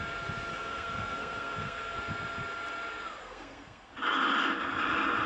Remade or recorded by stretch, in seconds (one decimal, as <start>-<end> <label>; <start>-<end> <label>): 0.0-0.5 recorded; 0.5-2.0 remade; 2.0-3.2 recorded; 3.2-3.9 remade; 3.9-5.3 recorded